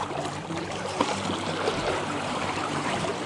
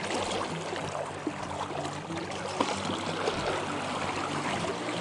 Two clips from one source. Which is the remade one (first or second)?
first